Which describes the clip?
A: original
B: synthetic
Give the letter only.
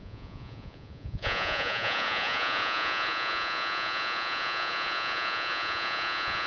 B